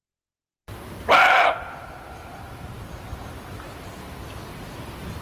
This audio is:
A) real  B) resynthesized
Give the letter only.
A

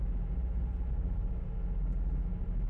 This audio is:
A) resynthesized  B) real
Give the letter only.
B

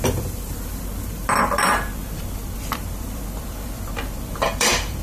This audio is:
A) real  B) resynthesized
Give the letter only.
B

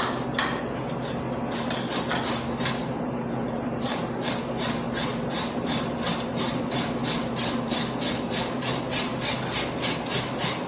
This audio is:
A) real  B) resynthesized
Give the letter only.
A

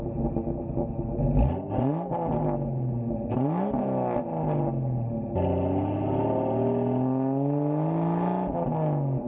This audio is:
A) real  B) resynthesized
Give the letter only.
A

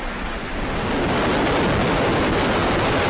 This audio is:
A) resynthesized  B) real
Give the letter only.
B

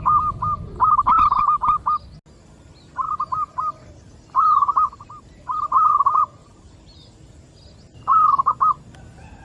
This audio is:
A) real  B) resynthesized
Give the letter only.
A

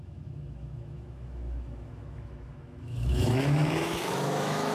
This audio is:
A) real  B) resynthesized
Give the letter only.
B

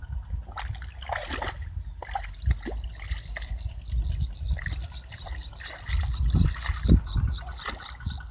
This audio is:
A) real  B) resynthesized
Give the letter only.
A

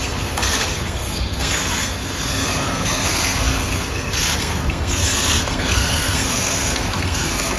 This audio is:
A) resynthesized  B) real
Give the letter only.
A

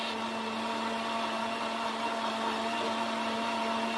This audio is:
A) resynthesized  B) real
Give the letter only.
B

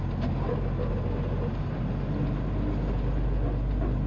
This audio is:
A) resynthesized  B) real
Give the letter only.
B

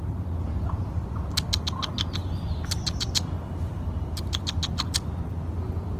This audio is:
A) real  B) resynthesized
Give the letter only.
A